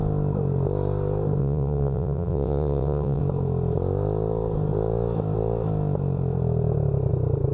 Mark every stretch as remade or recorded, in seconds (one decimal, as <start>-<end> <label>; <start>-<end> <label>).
0.0-1.4 recorded; 1.4-3.2 remade; 3.2-7.5 recorded